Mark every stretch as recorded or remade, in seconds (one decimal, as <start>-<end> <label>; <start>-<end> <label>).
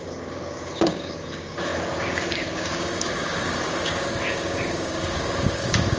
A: 0.0-6.0 remade